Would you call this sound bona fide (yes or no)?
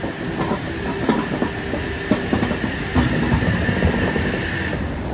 yes